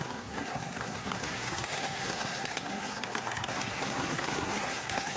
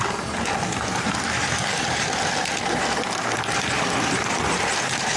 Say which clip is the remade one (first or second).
first